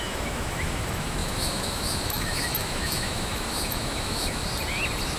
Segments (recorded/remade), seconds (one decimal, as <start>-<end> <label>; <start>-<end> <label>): 0.0-4.4 remade; 4.4-5.2 recorded